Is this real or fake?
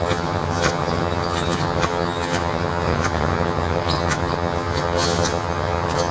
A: fake